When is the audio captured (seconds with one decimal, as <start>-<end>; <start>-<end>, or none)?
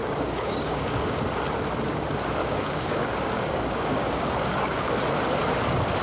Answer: 1.2-2.4; 4.9-6.0